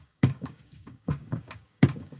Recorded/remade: remade